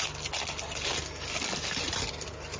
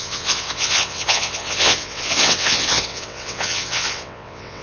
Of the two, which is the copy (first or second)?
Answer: second